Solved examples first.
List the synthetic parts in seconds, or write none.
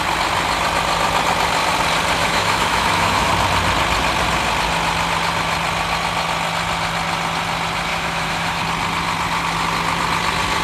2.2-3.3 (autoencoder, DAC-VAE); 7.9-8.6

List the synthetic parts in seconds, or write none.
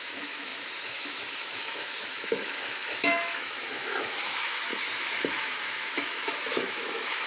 0.0-4.7 (autoencoder, DAC-VAE); 5.2-7.3